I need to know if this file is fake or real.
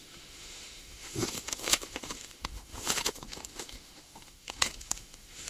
fake